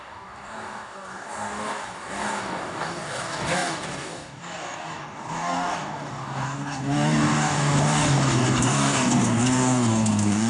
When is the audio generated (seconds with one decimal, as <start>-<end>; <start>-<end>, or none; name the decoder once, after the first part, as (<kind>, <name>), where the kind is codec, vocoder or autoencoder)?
0.0-10.5 (codec, DAC)